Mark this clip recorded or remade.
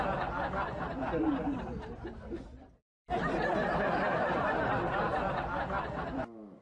recorded